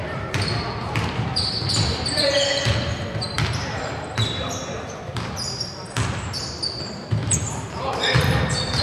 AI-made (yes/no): yes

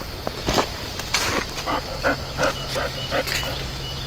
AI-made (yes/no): no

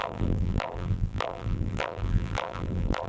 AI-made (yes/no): yes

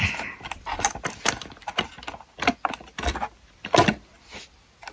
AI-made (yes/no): no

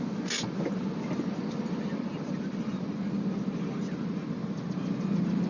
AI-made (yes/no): no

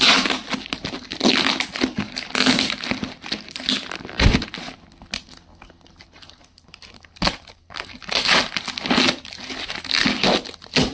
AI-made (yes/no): no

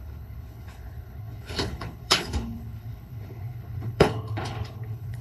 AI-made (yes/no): yes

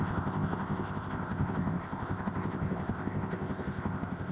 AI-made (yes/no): yes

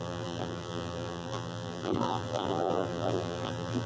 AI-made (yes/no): yes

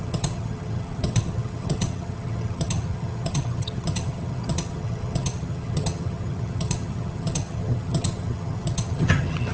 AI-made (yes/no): yes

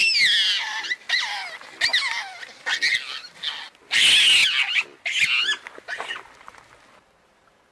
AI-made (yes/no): no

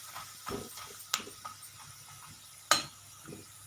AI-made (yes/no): no